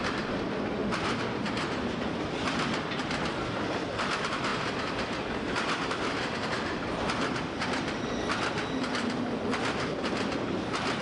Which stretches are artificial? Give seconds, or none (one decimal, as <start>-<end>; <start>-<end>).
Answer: 0.0-0.8; 4.1-4.5; 6.5-11.0